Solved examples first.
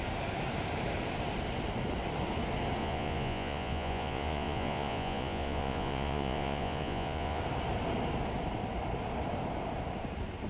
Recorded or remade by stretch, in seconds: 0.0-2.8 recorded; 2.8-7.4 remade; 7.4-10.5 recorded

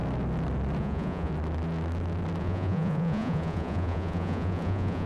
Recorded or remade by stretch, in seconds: 0.0-0.8 recorded; 0.8-1.3 remade; 1.3-2.4 recorded; 2.4-5.1 remade

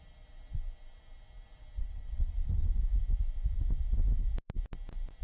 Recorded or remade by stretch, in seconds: 0.0-1.8 recorded; 1.8-2.8 remade; 2.8-5.2 recorded

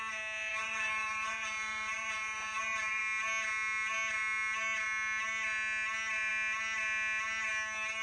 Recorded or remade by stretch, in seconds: 0.0-0.5 recorded; 0.5-3.0 remade; 3.0-8.0 recorded

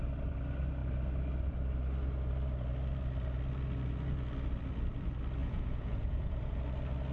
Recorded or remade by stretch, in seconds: 0.0-5.4 recorded; 5.4-6.6 remade; 6.6-7.1 recorded

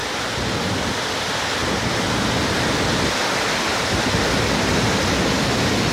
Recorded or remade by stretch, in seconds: 0.0-5.9 recorded

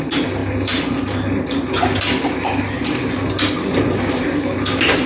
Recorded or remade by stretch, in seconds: 0.0-5.1 recorded

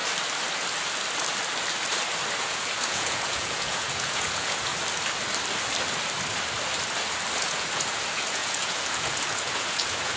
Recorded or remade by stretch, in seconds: 0.0-2.4 recorded; 2.4-4.7 remade; 4.7-7.4 recorded; 7.4-10.2 remade